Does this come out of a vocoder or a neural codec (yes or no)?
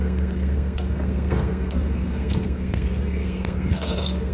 yes